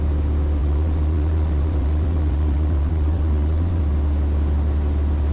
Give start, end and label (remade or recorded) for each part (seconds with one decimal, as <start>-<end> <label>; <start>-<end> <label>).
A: 0.0-0.6 recorded; 0.6-3.8 remade; 3.8-5.3 recorded